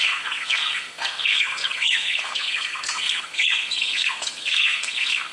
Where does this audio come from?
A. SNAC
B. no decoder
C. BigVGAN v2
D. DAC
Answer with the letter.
A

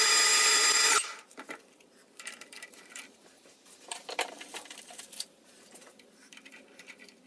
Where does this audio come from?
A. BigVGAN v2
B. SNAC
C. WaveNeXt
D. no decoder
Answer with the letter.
A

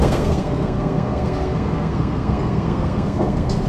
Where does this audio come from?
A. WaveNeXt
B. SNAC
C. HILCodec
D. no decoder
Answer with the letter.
B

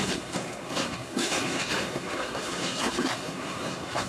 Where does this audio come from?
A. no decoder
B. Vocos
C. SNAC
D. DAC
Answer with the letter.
C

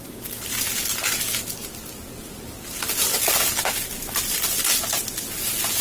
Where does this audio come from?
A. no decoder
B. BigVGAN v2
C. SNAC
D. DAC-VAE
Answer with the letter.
A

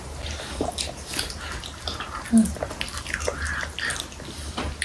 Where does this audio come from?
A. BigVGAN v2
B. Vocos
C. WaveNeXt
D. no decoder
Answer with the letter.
D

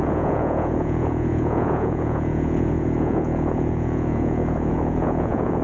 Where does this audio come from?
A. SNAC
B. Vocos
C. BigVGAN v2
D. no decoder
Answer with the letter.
B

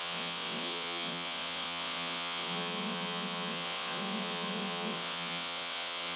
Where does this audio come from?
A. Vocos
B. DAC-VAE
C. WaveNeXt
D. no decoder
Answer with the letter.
C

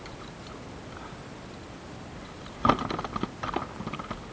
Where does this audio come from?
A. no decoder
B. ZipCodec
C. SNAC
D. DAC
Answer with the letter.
A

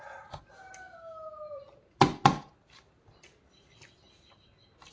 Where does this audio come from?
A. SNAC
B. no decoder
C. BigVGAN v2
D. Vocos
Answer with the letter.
B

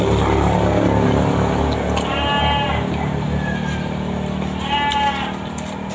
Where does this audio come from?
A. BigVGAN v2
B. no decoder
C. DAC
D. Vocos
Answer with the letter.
B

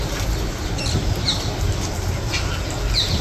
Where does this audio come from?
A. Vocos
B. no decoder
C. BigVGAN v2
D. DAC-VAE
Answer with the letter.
B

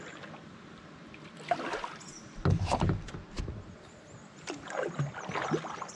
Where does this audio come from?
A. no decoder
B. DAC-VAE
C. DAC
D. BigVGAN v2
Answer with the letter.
A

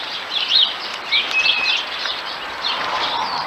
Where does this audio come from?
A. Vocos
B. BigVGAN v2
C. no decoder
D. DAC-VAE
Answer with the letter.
C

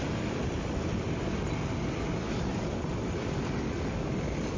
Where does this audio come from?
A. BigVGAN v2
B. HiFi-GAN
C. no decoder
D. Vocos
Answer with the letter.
C